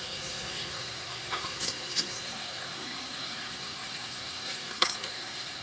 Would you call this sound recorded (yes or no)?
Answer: no